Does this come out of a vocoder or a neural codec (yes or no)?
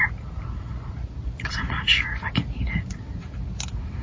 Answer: no